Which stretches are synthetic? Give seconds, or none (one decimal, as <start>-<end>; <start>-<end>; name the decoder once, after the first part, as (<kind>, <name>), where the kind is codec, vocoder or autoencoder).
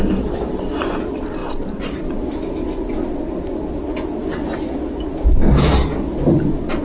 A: none